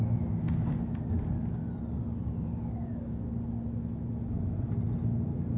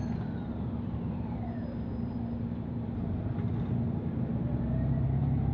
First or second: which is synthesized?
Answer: second